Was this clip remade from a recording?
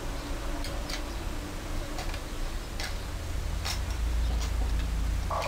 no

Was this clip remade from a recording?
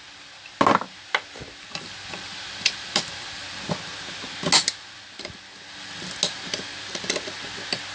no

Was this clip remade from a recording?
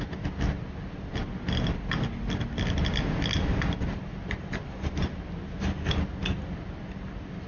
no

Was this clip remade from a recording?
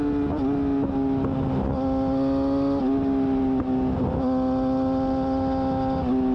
no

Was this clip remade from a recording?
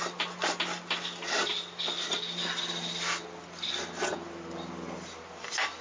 no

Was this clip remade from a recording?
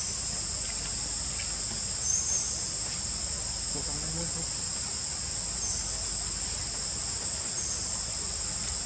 no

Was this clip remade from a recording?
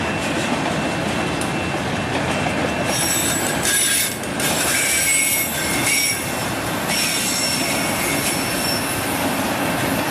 no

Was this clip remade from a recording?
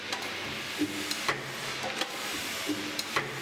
no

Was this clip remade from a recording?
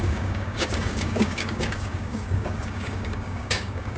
yes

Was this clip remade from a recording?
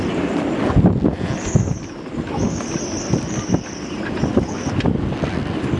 no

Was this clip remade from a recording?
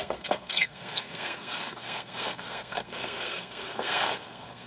yes